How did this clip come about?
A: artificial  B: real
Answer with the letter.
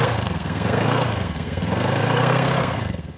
A